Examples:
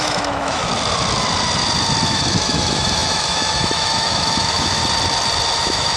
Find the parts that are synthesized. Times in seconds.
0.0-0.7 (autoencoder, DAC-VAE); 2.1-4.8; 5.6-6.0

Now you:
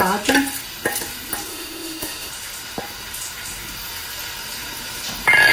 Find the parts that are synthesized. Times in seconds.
1.5-2.3 (autoencoder, DAC-VAE)

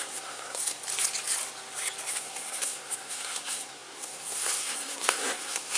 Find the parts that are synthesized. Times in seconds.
0.0-0.8 (codec, SNAC); 2.1-5.8

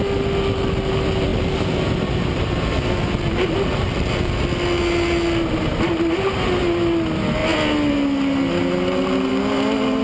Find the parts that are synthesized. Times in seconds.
none

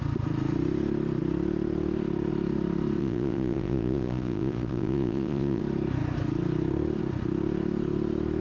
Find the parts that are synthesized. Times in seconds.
3.0-5.6 (vocoder, Vocos)